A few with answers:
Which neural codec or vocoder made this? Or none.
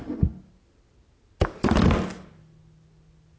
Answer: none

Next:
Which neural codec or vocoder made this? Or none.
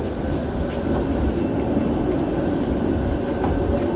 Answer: none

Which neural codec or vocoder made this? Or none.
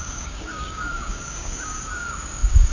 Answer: codec, DAC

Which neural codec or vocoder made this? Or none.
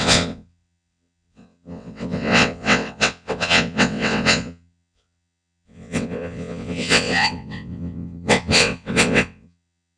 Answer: vocoder, WaveNeXt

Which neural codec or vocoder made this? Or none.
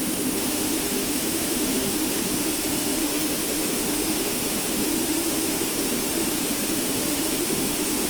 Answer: autoencoder, DAC-VAE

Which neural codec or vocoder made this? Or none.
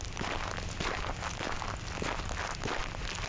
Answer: none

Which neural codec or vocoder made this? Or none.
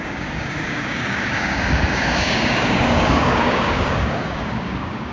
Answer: codec, DAC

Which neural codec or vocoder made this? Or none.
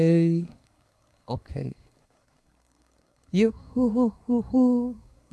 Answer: codec, SNAC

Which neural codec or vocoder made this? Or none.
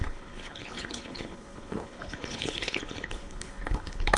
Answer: codec, HILCodec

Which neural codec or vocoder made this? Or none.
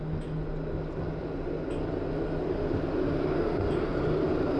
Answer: none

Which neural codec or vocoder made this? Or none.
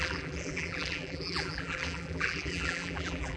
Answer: vocoder, BigVGAN v2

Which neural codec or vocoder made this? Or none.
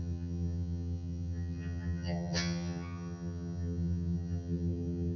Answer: vocoder, HiFi-GAN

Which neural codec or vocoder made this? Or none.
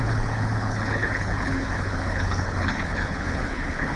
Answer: codec, HILCodec